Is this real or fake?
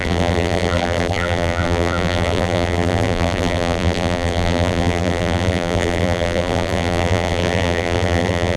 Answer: fake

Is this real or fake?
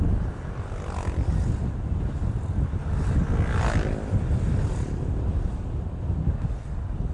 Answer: real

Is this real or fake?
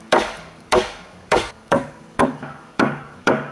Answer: fake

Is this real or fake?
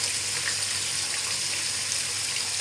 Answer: real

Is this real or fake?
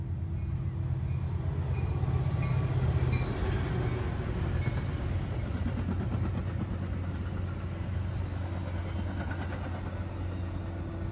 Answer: real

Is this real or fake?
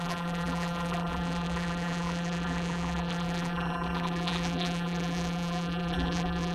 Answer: fake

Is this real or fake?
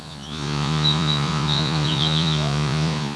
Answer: fake